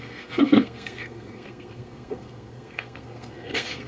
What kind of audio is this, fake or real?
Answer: fake